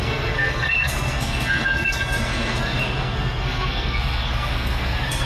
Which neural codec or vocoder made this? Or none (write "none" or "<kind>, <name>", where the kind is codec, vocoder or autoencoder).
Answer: codec, SNAC